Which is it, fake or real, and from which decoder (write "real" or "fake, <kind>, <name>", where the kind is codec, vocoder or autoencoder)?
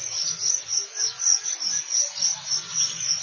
real